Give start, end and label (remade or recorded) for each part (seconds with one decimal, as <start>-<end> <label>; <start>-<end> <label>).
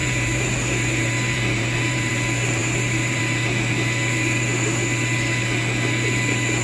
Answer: 0.0-2.1 remade; 2.1-2.6 recorded; 2.6-3.2 remade; 3.2-6.6 recorded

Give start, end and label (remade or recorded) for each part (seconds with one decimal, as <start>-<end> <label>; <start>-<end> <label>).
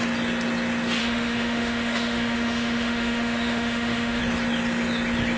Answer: 0.0-1.0 recorded; 1.0-4.2 remade; 4.2-5.4 recorded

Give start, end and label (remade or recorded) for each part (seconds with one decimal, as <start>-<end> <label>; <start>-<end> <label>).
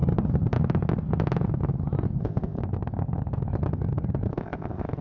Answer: 0.0-2.2 recorded; 2.2-2.6 remade; 2.6-4.3 recorded; 4.3-5.0 remade